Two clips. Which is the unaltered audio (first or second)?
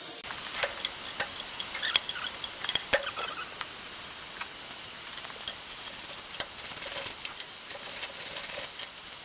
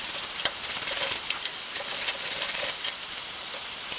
first